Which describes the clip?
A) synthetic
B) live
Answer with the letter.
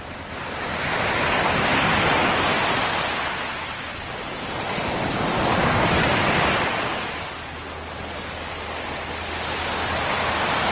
B